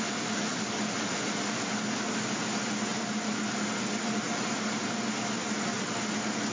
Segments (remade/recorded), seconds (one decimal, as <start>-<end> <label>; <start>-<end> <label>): 0.0-6.5 recorded